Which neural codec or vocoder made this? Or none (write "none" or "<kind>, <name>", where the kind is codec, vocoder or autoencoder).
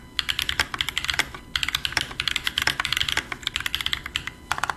none